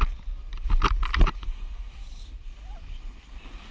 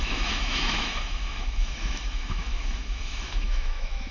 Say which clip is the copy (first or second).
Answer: second